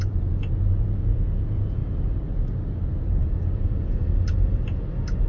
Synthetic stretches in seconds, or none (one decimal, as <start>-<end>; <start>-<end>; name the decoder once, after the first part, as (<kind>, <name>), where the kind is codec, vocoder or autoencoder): 0.0-1.8 (vocoder, Vocos); 3.2-4.1